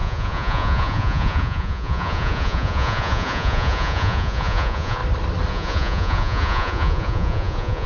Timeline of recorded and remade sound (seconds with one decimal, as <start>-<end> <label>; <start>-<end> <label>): 0.0-5.0 remade; 5.0-5.5 recorded; 5.5-7.9 remade